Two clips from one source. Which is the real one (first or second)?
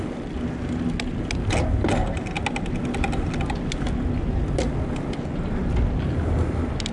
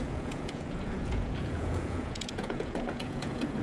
first